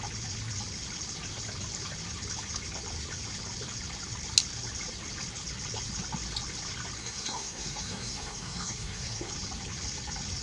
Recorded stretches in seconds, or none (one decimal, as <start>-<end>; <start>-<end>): 0.0-7.0; 9.3-10.4